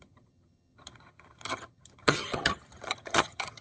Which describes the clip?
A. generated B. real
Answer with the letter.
A